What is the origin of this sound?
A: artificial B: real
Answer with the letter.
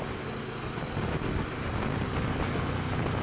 B